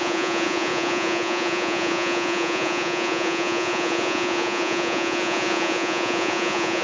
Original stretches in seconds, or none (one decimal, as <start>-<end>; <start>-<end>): none